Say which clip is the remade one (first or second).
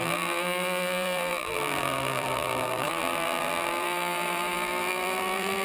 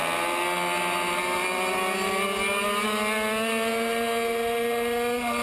first